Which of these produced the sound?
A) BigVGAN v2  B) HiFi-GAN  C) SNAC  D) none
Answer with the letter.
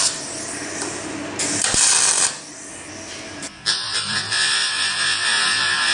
A